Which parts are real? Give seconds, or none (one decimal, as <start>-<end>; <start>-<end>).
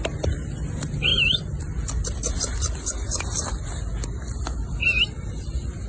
0.0-5.9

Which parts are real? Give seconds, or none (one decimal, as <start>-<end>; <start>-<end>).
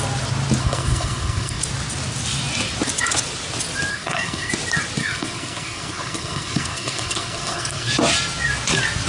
0.0-0.6; 1.6-3.9; 4.5-5.0; 7.9-9.1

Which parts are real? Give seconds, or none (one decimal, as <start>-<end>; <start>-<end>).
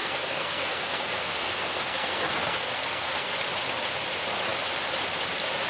3.4-5.7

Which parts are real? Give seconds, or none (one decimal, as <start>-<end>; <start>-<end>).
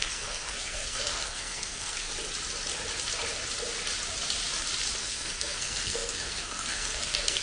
2.1-5.0